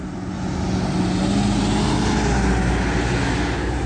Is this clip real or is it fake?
real